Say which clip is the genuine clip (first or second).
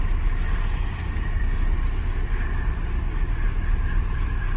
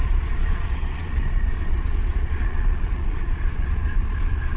first